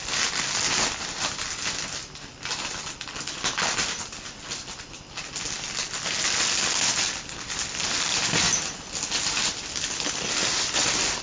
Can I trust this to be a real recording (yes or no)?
yes